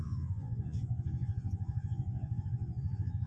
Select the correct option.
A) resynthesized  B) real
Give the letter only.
A